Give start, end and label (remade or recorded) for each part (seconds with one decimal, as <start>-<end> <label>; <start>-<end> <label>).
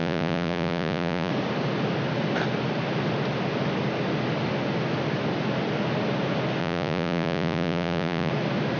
0.0-1.3 remade; 1.3-6.6 recorded; 6.6-8.3 remade; 8.3-8.8 recorded